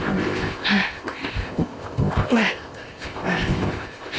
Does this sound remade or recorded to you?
remade